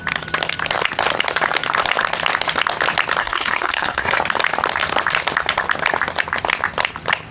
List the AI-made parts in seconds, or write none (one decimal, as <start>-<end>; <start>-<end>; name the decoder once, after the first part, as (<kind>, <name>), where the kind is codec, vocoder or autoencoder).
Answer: 3.2-4.2 (codec, SNAC)